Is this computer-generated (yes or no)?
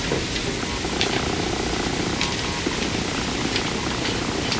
no